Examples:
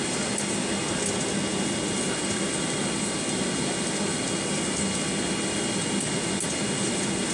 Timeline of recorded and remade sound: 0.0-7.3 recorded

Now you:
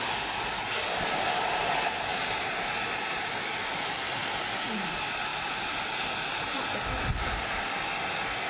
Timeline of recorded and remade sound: 0.0-2.1 recorded; 2.1-3.4 remade; 3.4-5.3 recorded; 5.3-6.6 remade; 6.6-8.5 recorded

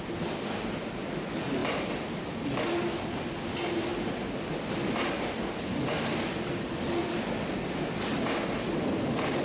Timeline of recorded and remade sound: 0.0-9.4 recorded

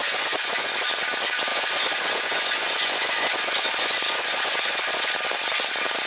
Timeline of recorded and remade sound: 0.0-0.7 remade; 0.7-1.5 recorded; 1.5-5.1 remade; 5.1-6.1 recorded

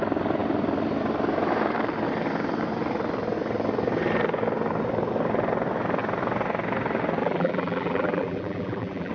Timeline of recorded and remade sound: 0.0-7.2 recorded; 7.2-9.1 remade